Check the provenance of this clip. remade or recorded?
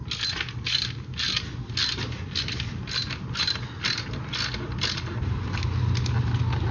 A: recorded